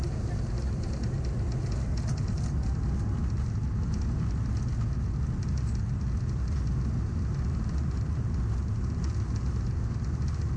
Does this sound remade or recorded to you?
recorded